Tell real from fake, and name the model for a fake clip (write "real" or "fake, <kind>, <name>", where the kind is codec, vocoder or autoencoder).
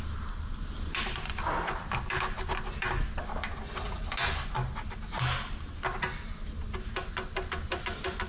real